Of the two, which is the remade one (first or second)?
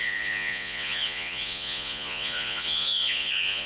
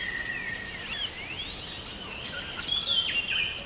first